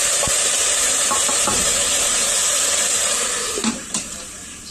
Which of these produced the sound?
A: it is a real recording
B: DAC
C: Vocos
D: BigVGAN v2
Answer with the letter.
D